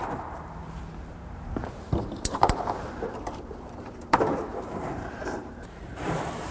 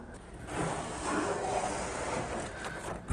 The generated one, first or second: first